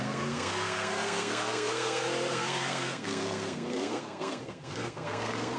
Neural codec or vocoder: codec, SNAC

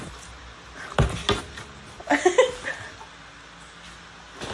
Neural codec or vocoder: none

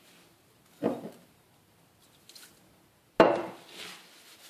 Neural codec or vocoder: none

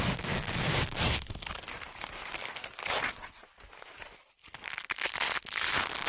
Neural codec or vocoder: none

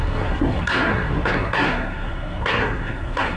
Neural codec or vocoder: codec, SNAC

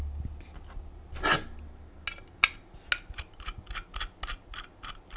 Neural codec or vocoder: none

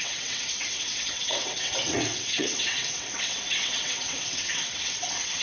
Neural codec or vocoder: vocoder, WaveNeXt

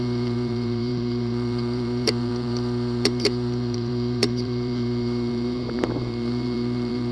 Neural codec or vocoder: vocoder, BigVGAN v2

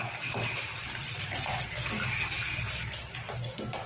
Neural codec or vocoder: none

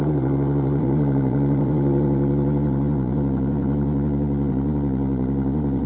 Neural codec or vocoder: vocoder, Vocos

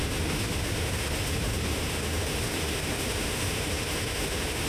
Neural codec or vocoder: autoencoder, DAC-VAE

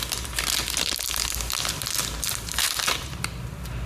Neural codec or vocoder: none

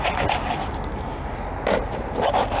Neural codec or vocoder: none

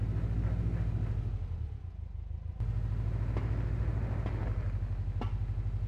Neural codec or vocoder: none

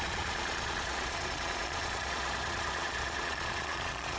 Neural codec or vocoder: vocoder, Vocos